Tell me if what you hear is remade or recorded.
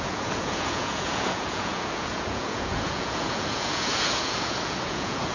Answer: remade